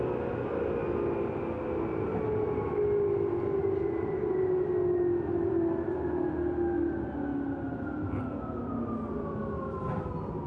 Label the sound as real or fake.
real